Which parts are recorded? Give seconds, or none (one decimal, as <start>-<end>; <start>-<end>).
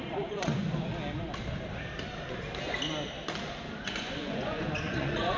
0.6-3.8